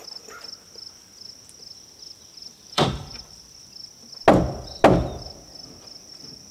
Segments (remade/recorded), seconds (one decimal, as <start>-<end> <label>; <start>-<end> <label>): 0.0-2.4 recorded; 2.4-3.5 remade; 3.5-6.5 recorded